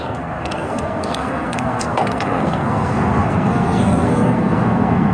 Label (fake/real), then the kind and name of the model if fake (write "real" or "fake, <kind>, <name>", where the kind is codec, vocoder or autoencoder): fake, codec, SNAC